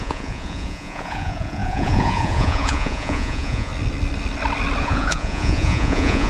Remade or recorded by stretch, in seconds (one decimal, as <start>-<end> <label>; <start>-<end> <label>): 0.0-3.7 remade; 3.7-4.8 recorded; 4.8-6.3 remade

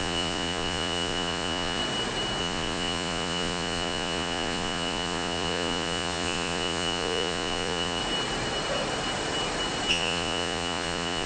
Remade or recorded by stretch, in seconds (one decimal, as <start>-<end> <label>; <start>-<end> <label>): 0.0-1.8 remade; 1.8-2.4 recorded; 2.4-8.0 remade; 8.0-9.9 recorded; 9.9-11.3 remade

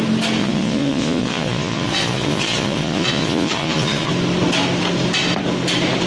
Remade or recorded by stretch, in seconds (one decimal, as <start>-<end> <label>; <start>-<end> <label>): 0.0-0.4 recorded; 0.4-4.1 remade; 4.1-6.1 recorded